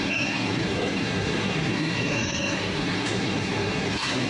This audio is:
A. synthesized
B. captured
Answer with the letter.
A